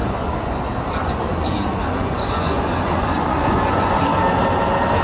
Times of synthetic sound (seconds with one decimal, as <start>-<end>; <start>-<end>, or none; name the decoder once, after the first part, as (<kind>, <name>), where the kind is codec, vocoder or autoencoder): 0.0-0.6 (vocoder, Vocos); 1.0-4.0